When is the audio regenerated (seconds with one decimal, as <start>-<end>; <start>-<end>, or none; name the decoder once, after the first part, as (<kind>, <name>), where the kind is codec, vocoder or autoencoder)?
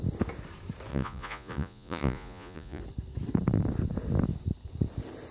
0.9-2.8 (vocoder, Vocos)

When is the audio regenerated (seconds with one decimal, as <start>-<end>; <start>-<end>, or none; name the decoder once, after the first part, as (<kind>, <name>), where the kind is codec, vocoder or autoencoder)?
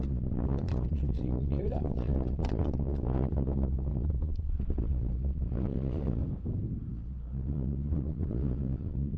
0.0-6.2 (vocoder, Vocos); 6.9-9.2